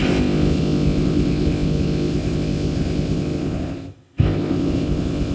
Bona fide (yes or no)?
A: no